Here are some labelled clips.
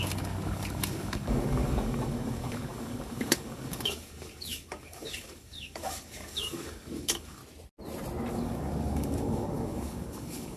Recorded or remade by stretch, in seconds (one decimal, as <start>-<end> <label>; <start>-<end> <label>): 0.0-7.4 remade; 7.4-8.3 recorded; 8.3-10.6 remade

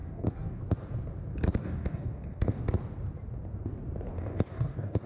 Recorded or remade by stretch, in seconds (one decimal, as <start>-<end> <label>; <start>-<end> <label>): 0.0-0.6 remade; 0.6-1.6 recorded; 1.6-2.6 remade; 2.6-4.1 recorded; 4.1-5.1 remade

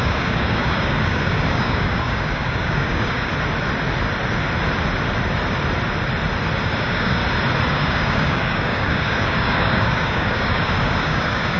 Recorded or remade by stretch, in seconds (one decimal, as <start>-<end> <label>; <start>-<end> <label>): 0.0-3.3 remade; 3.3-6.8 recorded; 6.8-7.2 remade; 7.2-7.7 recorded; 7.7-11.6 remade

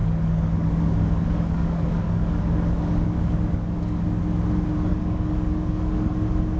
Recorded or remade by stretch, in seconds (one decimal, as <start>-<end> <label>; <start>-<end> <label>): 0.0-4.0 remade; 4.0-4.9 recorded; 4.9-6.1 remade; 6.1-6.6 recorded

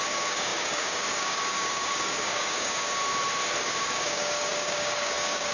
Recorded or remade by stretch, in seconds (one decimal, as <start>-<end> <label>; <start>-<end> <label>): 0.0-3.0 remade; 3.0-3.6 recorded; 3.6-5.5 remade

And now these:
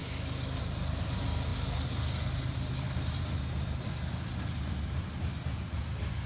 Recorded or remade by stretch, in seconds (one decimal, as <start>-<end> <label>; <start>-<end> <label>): 0.0-0.6 remade; 0.6-6.3 recorded